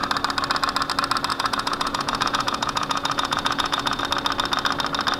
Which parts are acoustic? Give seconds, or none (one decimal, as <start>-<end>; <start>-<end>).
0.0-1.3; 4.0-5.2